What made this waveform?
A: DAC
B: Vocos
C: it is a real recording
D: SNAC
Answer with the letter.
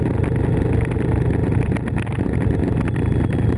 C